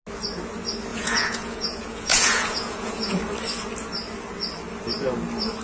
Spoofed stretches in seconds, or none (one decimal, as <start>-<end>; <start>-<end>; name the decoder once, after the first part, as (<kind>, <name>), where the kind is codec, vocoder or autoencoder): 0.9-3.1 (vocoder, Vocos)